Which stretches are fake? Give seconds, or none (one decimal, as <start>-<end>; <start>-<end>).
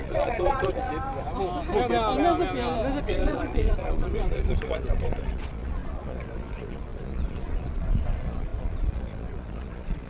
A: 0.0-0.9; 3.0-10.1